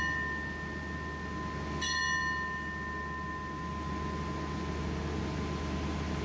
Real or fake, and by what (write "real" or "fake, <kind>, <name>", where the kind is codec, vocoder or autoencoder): real